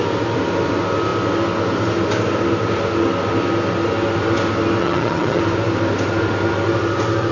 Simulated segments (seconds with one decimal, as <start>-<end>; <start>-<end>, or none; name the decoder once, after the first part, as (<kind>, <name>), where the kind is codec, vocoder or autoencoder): 4.8-5.4 (vocoder, HiFi-GAN)